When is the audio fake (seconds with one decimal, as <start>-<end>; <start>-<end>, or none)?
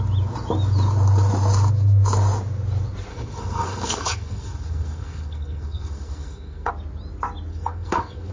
3.1-6.7; 7.5-8.3